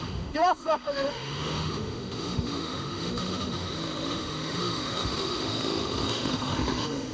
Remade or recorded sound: remade